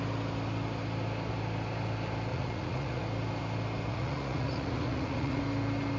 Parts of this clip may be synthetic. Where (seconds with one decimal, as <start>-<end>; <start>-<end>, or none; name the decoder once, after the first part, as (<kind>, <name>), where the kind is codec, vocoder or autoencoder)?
2.3-3.0 (vocoder, Vocos); 3.9-5.4